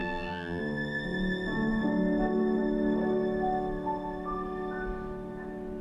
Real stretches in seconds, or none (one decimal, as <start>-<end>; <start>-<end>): 0.6-5.8